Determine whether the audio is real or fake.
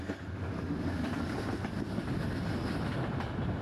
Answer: real